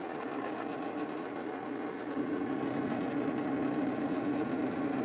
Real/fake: fake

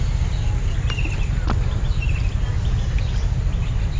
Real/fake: real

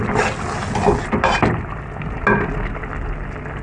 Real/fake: real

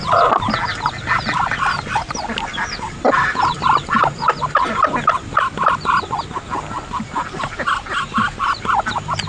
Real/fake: real